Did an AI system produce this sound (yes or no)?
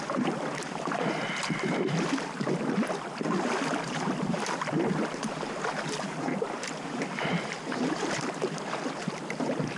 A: yes